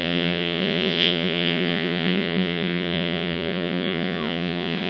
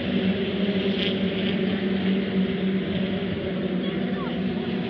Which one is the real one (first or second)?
second